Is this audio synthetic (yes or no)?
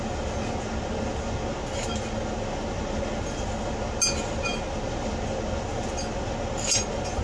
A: no